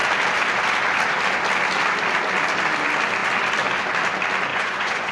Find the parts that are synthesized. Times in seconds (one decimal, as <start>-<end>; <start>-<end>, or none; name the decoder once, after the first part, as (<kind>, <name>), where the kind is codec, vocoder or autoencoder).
4.5-5.1 (vocoder, Vocos)